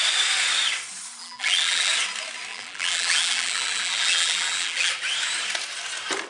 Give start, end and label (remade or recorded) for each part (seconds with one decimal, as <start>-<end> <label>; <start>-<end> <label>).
0.0-1.2 recorded; 1.2-1.9 remade; 1.9-2.5 recorded; 2.5-4.9 remade; 4.9-6.3 recorded